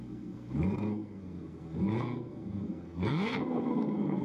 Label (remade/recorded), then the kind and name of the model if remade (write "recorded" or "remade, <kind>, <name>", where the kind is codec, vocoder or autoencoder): remade, codec, SNAC